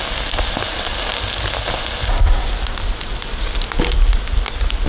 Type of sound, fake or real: real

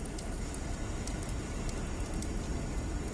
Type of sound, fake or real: real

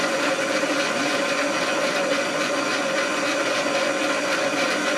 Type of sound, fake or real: fake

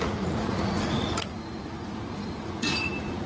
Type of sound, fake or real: fake